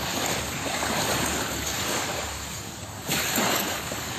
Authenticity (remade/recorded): remade